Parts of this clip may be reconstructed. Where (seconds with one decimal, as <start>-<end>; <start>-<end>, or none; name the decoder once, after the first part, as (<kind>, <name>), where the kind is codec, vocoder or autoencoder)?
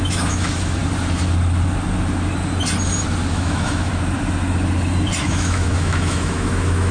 0.0-0.8 (autoencoder, DAC-VAE); 3.3-3.9; 5.2-6.9